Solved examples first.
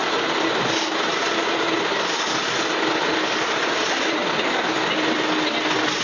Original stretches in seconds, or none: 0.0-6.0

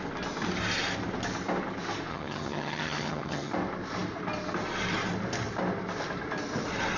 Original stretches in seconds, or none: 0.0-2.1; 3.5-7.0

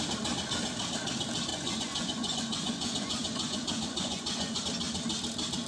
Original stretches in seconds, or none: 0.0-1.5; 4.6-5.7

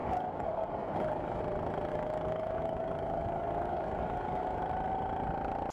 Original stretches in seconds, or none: 1.4-1.9; 4.6-5.7

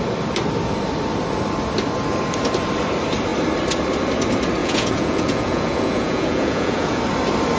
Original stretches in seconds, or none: 0.0-4.6; 7.0-7.6

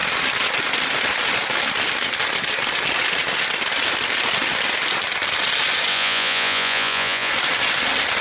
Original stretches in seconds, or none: 0.0-5.9; 7.3-8.2